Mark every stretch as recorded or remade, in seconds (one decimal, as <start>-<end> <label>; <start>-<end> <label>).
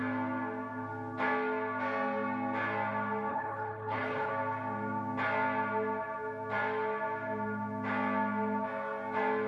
0.0-3.3 recorded; 3.3-4.3 remade; 4.3-9.5 recorded